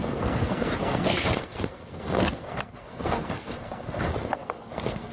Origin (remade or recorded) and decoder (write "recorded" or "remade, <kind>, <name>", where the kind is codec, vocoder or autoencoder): remade, codec, SNAC